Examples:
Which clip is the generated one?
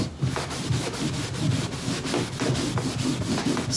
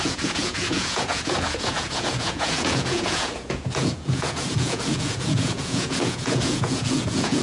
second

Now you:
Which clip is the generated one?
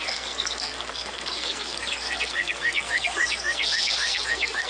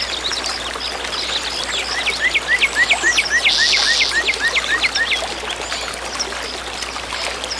first